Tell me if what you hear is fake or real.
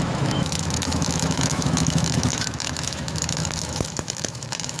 fake